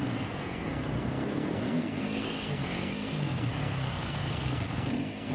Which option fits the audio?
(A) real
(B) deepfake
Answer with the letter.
B